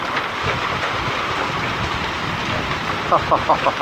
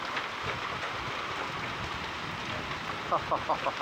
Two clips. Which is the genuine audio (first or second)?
second